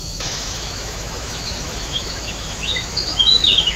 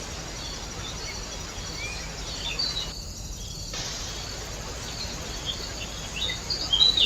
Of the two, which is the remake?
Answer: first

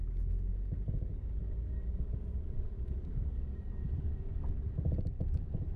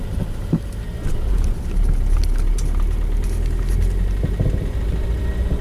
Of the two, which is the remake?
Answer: first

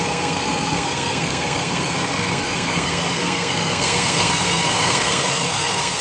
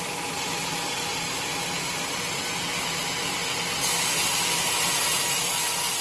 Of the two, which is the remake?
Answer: first